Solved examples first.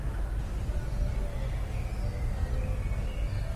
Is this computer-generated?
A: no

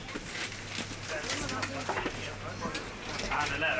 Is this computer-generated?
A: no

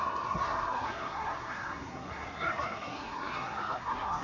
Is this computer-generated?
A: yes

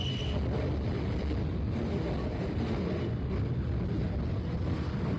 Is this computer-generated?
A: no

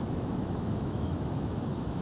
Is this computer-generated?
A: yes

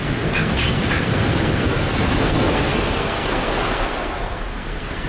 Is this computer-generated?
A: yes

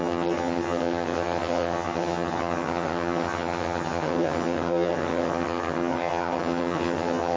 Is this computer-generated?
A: yes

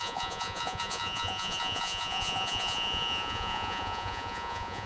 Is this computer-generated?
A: yes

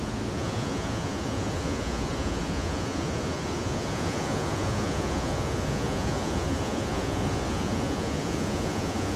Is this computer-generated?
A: yes